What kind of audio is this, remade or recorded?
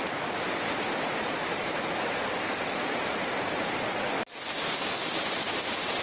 remade